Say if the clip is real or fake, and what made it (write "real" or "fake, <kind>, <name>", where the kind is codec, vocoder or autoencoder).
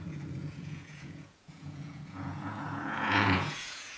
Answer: fake, vocoder, Vocos